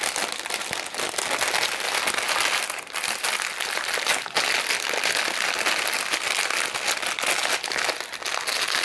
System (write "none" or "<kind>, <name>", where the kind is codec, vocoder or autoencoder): none